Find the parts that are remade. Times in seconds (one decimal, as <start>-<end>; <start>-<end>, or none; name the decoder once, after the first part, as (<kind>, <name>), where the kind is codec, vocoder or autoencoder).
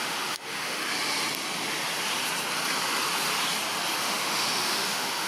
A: 0.0-0.8 (autoencoder, DAC-VAE); 4.0-5.3